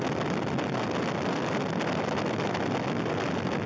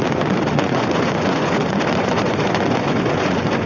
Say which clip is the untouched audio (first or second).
first